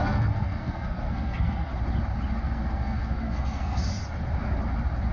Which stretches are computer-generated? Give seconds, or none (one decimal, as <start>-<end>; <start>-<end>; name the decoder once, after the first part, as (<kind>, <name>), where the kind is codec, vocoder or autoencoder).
0.0-1.7 (codec, SNAC); 2.4-3.8